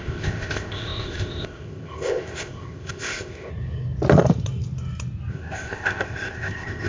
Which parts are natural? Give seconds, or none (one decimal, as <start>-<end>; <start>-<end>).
3.5-5.3